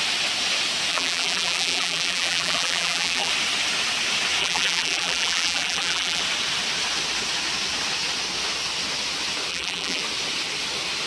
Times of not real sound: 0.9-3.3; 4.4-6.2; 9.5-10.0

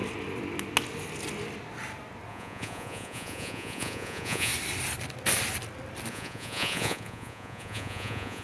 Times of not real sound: 2.3-4.5; 6.1-8.4

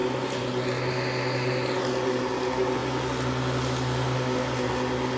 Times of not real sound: none